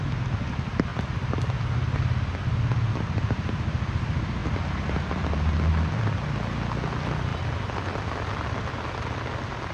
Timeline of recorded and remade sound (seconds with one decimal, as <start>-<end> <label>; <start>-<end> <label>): 0.0-9.7 recorded